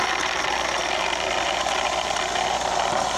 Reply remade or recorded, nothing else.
recorded